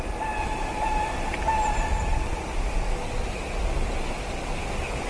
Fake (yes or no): no